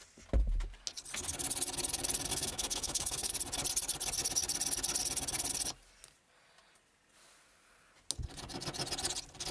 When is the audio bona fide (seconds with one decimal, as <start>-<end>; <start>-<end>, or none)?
0.0-2.3; 3.3-9.5